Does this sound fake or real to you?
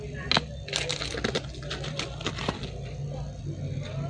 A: real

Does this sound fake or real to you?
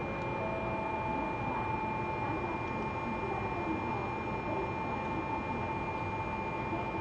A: real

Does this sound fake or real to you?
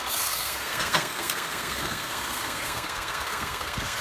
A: fake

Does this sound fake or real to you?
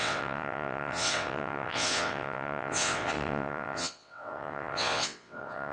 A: fake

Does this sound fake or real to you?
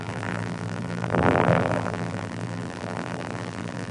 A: fake